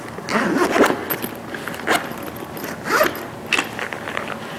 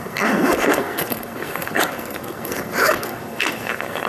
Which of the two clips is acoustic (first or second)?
first